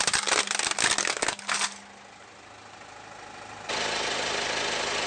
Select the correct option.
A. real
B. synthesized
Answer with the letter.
A